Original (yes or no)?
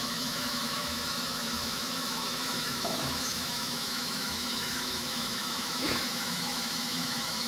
no